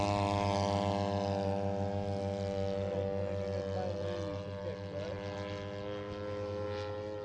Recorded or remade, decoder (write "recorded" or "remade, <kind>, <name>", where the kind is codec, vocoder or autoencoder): recorded